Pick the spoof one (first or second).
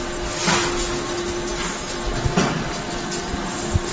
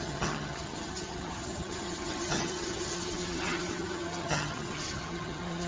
second